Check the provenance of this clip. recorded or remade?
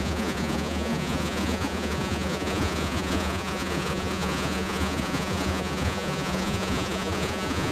remade